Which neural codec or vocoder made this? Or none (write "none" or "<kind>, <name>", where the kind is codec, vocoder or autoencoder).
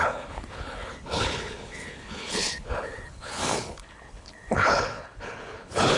codec, HILCodec